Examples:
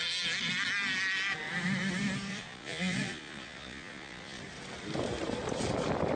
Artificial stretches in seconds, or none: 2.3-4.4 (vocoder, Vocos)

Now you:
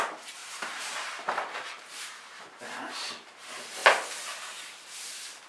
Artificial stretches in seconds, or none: 0.4-3.1 (vocoder, BigVGAN v2)

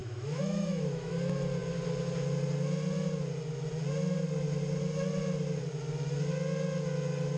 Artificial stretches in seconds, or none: 0.0-1.1 (autoencoder, DAC-VAE)